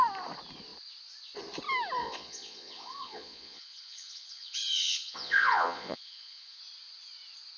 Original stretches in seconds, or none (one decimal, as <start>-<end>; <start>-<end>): 0.0-2.0; 6.6-7.6